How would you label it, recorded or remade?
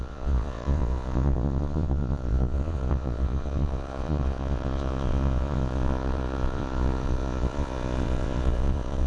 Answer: remade